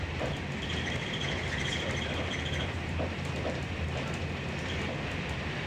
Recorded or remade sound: remade